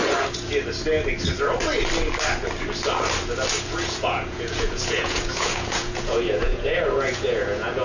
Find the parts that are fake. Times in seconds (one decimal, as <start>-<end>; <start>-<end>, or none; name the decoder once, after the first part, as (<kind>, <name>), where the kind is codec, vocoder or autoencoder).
3.7-7.8 (vocoder, Vocos)